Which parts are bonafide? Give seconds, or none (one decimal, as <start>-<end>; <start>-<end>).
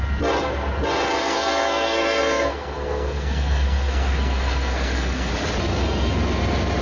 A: 0.0-1.2; 5.3-5.7; 6.2-6.8